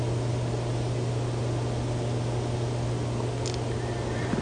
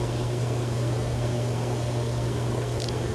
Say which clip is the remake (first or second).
second